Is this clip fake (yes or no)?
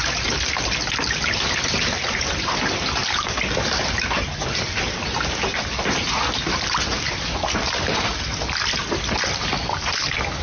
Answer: no